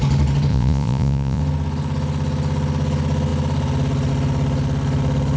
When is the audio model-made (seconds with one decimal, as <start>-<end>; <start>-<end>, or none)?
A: 0.5-1.4